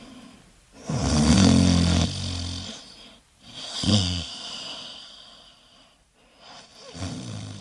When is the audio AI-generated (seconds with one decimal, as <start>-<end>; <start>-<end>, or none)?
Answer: 3.9-4.5